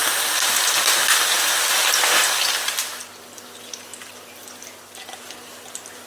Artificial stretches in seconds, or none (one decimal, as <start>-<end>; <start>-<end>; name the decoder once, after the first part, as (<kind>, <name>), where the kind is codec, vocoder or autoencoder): none